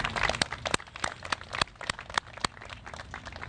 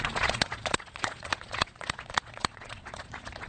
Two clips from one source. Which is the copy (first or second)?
second